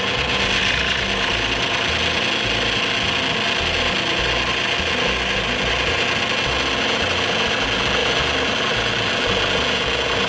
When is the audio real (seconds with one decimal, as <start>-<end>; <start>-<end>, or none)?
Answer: 0.0-10.3